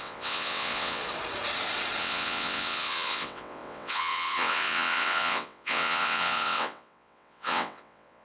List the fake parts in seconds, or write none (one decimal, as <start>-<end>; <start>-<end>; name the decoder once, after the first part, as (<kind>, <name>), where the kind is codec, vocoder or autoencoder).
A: 0.0-1.0 (vocoder, WaveNeXt); 2.0-8.2